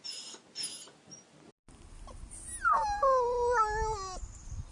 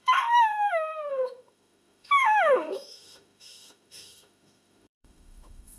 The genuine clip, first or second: first